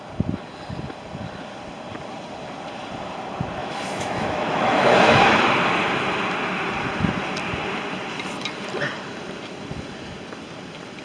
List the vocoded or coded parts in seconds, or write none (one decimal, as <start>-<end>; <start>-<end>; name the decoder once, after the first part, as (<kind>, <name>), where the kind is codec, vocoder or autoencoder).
3.6-5.4 (autoencoder, DAC-VAE)